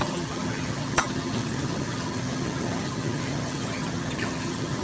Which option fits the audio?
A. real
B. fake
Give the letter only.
B